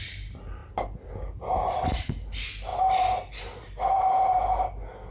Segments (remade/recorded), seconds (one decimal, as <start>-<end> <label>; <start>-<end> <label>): 0.0-5.1 recorded

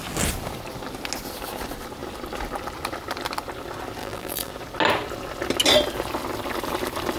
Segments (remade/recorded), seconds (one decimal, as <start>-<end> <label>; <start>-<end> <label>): 0.0-4.0 recorded; 4.0-4.5 remade; 4.5-7.2 recorded